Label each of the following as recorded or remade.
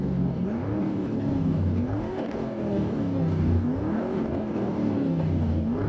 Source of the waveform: remade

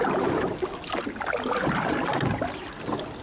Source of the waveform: recorded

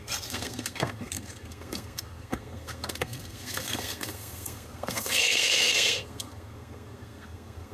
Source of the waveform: remade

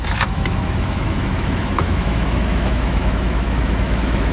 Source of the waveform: remade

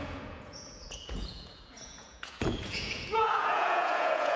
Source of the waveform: remade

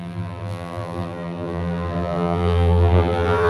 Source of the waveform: remade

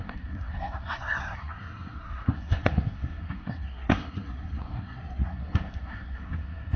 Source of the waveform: remade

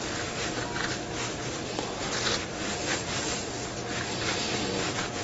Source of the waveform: recorded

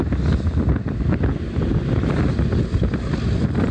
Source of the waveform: recorded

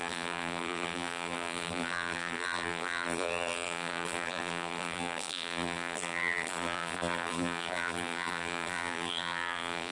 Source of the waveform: remade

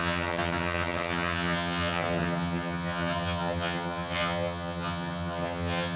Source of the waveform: remade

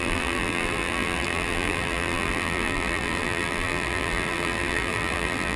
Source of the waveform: remade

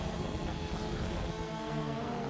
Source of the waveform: remade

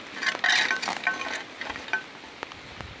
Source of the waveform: recorded